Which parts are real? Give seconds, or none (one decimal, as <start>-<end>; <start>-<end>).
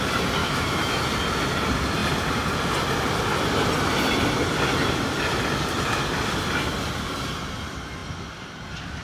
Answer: 0.0-0.4; 1.0-9.0